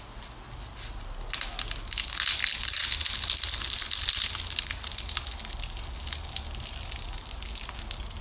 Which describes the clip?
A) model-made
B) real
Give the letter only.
B